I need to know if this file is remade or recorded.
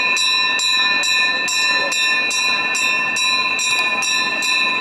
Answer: recorded